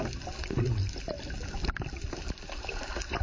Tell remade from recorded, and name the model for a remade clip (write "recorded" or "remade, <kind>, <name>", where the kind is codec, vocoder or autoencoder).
recorded